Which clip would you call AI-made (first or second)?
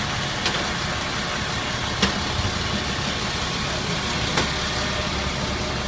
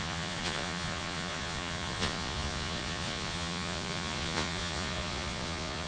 second